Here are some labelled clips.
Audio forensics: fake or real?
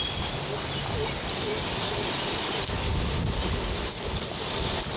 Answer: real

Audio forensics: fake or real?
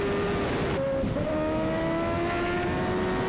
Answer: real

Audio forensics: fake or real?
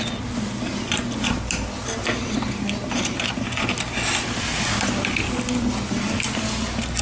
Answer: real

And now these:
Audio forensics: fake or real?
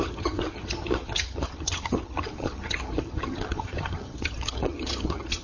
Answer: fake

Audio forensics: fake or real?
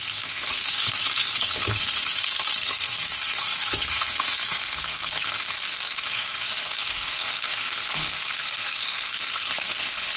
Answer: fake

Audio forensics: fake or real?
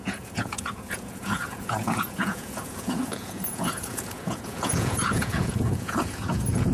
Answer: fake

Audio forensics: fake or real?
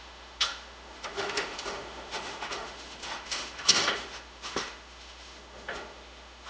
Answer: fake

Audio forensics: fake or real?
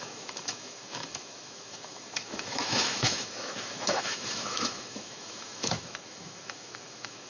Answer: fake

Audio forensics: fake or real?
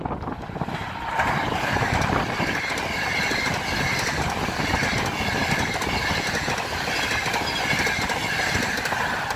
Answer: fake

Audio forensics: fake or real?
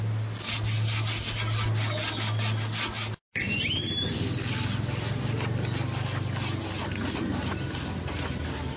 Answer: real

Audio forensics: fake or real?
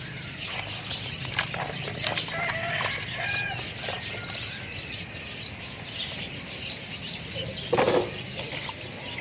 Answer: real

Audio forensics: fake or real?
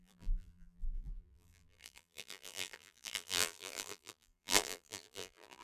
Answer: fake